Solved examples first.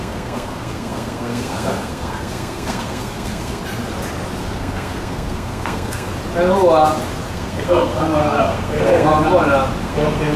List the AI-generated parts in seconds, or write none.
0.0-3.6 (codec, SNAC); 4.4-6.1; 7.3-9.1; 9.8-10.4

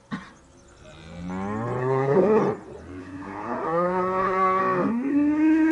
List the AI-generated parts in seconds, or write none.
1.8-2.4 (codec, SNAC); 3.0-4.6; 5.1-5.7

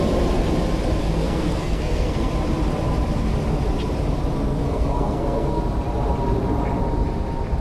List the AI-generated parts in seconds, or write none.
1.0-2.3 (codec, SNAC); 4.5-5.6

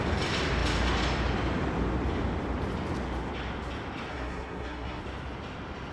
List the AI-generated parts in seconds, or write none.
4.1-5.0 (codec, SNAC)

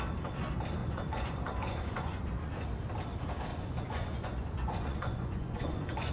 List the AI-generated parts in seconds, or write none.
0.8-2.5 (vocoder, Vocos); 3.5-6.1

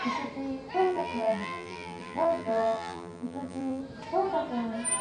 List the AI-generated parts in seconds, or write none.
0.8-3.8 (vocoder, BigVGAN v2)

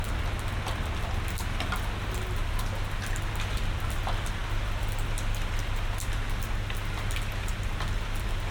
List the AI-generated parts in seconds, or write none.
none